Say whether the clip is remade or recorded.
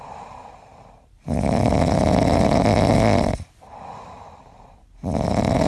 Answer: recorded